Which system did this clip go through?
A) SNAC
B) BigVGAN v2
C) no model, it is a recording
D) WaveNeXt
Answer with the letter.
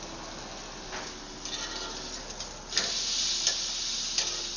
C